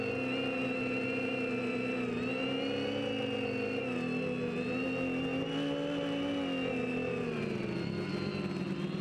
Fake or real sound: real